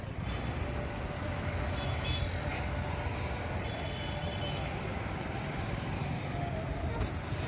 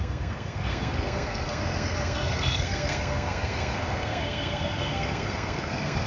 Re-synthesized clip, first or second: second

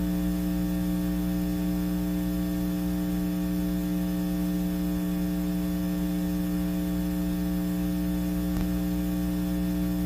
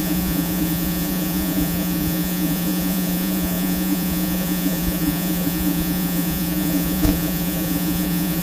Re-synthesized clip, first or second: second